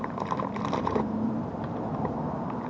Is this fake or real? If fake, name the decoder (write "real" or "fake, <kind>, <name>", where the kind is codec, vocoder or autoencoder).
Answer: fake, vocoder, BigVGAN v2